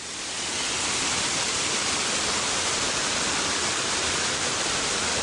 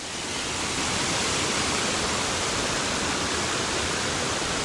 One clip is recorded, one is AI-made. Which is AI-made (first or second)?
second